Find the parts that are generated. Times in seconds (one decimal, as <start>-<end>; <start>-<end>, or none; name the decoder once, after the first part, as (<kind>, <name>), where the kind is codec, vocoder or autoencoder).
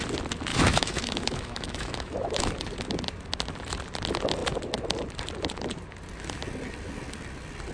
0.5-2.5 (autoencoder, DAC-VAE)